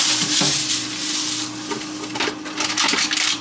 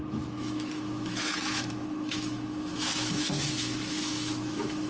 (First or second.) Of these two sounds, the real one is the first